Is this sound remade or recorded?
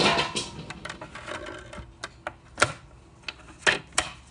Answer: recorded